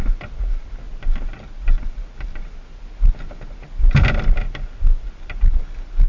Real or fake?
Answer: real